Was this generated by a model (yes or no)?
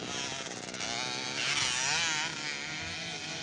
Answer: no